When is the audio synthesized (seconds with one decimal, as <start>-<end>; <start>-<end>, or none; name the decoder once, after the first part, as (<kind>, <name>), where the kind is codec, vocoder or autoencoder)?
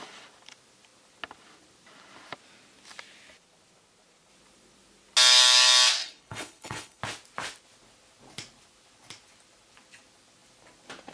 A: 6.0-7.0 (codec, HILCodec)